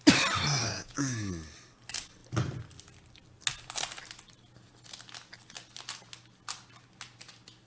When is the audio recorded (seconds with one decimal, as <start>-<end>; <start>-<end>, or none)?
0.0-0.6; 1.3-7.7